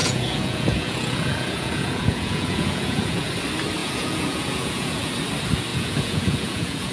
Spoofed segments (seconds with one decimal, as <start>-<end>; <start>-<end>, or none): 0.0-3.3; 3.8-5.1; 5.7-6.9